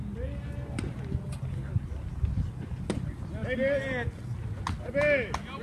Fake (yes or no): no